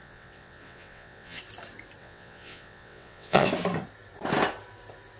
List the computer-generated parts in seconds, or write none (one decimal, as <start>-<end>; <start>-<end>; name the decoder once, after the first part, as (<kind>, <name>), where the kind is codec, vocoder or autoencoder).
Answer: 0.0-1.4 (vocoder, WaveNeXt); 2.0-3.5